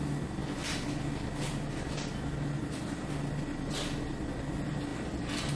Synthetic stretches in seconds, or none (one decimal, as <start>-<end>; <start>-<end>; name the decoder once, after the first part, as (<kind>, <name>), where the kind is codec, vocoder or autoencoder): none